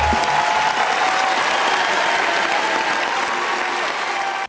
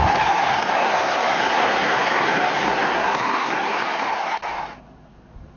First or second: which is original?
first